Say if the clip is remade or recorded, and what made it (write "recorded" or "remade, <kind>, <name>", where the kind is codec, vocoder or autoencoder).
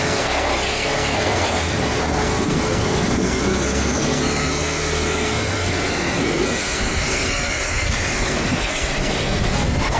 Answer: remade, codec, SNAC